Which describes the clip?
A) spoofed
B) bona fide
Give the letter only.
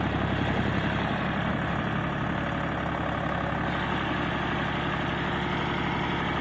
B